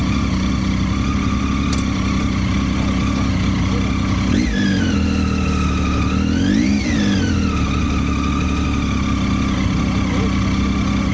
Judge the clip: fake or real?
real